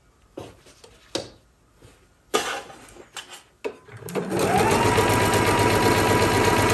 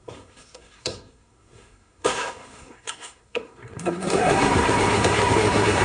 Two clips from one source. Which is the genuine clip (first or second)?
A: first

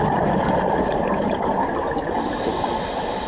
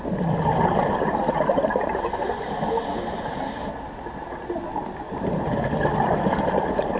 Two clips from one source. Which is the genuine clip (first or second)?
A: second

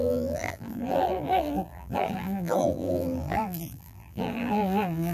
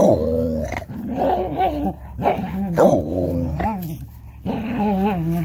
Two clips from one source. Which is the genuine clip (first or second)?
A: second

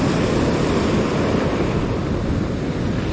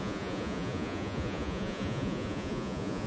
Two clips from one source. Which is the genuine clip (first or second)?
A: first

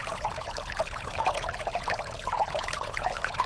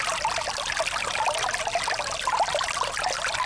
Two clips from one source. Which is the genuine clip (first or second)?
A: second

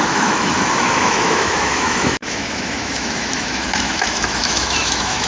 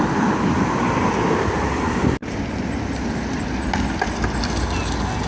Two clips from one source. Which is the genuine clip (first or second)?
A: second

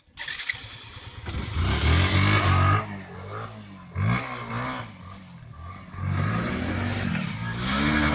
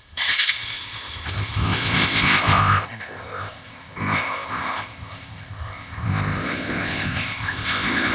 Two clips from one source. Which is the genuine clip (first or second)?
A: first